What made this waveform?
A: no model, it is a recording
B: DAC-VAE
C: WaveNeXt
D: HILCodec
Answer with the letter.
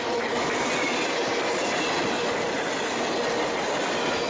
A